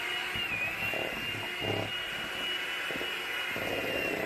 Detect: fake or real real